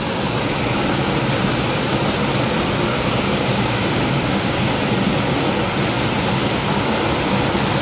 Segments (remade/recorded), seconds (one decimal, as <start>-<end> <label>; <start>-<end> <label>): 0.0-2.9 recorded; 2.9-4.7 remade; 4.7-7.8 recorded